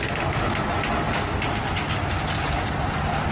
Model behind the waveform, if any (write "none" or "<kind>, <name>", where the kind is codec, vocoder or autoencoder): none